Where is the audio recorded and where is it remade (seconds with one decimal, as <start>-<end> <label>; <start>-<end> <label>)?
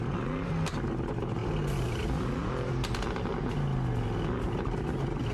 0.0-1.4 recorded; 1.4-2.5 remade; 2.5-5.3 recorded